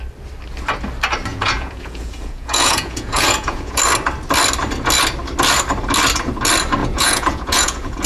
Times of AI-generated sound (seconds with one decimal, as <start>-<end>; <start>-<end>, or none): 1.3-3.8; 6.8-8.1